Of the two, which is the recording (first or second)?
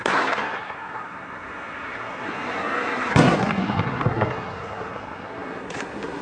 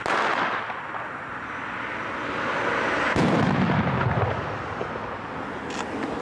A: second